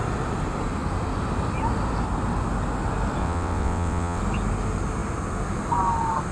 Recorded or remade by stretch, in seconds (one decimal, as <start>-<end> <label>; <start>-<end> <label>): 0.0-3.2 recorded; 3.2-4.2 remade; 4.2-6.3 recorded